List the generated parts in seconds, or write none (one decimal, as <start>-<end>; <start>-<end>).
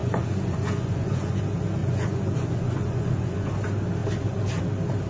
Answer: 0.0-1.4; 1.8-3.5